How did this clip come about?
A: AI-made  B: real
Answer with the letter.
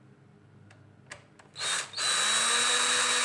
B